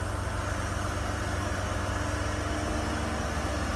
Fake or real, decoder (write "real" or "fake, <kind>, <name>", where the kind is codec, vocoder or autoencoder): real